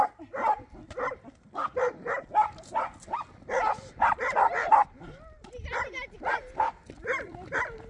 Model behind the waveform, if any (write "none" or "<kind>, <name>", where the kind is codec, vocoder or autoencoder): none